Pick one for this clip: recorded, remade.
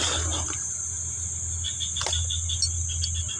recorded